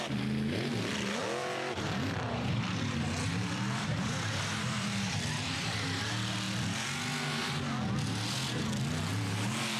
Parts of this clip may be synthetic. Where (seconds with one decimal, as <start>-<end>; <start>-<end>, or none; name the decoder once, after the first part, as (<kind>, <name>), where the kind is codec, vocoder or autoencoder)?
1.4-6.0 (vocoder, BigVGAN v2)